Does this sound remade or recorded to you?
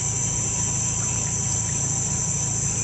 remade